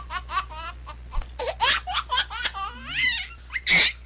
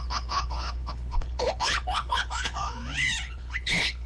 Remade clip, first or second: second